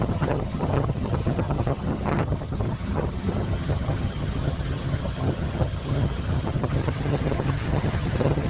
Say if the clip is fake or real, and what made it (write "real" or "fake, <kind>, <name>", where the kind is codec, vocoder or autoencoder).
fake, vocoder, HiFi-GAN